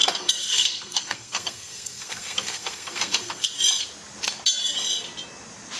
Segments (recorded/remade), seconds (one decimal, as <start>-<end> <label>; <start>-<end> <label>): 0.0-3.5 remade; 3.5-5.8 recorded